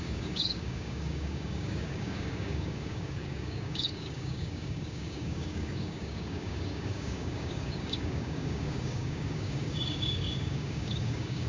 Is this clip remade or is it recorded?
remade